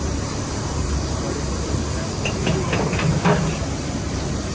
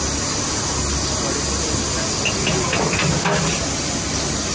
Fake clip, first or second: first